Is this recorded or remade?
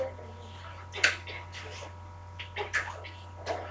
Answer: recorded